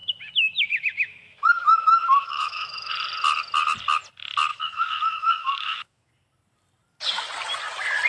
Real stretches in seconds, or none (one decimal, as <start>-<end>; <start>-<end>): 2.9-4.5; 6.1-8.1